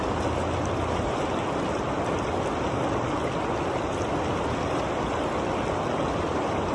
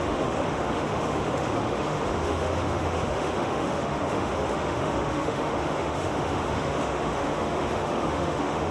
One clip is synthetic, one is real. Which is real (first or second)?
first